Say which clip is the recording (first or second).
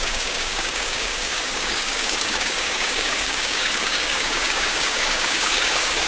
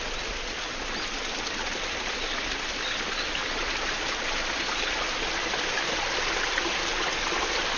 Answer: second